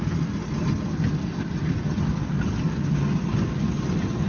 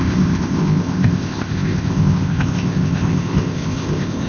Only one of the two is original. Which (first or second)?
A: first